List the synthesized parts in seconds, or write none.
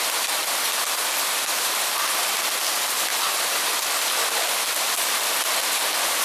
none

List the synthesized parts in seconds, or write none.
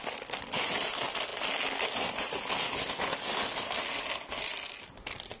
none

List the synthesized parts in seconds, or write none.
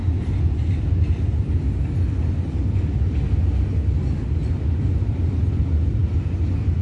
none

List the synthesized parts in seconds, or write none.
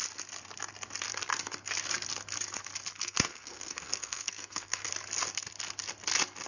2.9-4.9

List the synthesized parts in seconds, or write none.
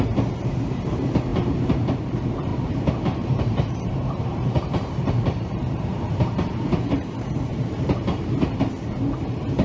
0.0-9.6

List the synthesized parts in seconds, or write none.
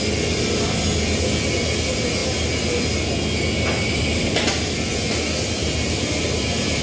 5.6-6.8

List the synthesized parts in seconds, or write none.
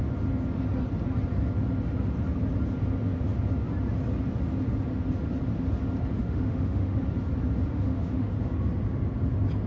6.2-7.0; 7.7-8.3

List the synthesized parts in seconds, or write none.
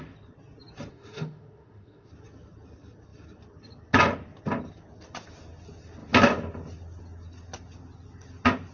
0.9-2.1